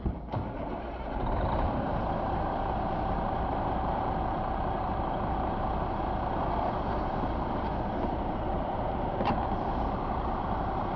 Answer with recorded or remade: remade